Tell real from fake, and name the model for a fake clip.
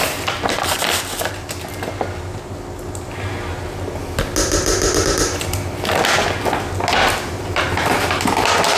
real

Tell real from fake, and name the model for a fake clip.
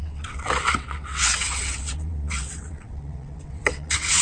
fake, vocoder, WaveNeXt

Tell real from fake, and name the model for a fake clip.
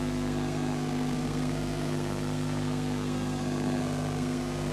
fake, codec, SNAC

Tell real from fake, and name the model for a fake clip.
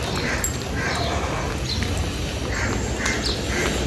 real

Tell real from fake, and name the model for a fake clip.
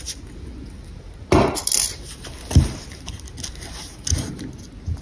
real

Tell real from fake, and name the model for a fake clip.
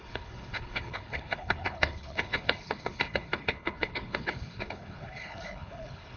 fake, codec, HILCodec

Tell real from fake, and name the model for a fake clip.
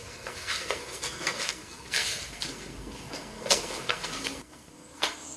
fake, codec, SNAC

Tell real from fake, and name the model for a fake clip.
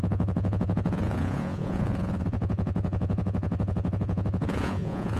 fake, vocoder, Vocos